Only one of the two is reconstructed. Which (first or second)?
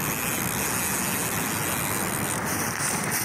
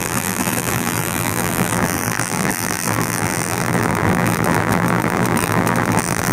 second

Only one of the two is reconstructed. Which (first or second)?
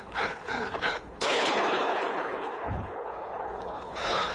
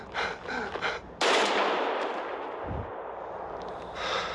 first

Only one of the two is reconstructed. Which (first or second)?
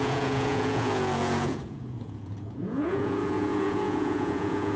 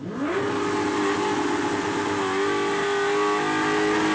first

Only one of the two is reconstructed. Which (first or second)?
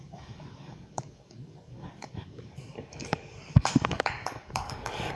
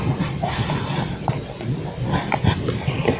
first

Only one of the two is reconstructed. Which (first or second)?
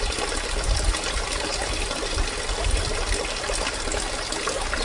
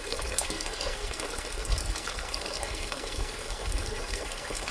second